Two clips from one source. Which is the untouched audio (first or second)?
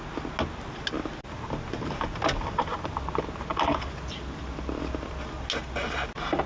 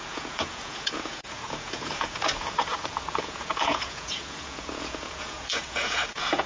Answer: first